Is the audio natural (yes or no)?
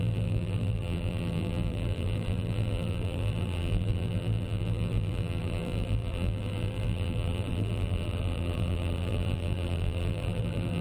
no